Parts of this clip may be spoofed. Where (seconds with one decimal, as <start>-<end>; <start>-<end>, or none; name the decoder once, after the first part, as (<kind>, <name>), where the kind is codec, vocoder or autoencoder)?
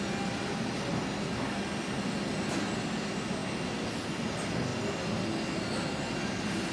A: none